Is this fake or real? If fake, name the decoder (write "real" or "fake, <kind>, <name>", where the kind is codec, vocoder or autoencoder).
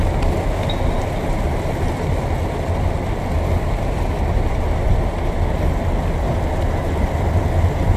real